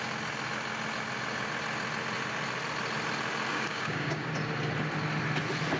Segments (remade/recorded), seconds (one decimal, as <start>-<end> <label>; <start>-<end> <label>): 0.0-3.5 recorded; 3.5-4.3 remade; 4.3-5.8 recorded